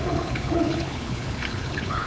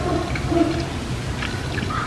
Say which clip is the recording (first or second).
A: second